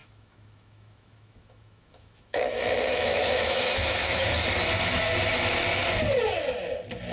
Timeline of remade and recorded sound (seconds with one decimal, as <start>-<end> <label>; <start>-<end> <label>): 0.0-4.3 remade; 4.3-7.1 recorded